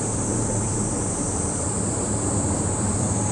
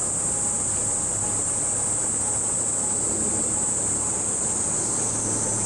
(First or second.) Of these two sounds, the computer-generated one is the first